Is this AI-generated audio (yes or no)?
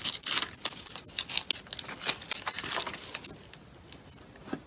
no